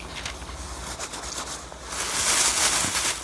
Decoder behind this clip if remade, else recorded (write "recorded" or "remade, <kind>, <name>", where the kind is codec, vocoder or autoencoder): recorded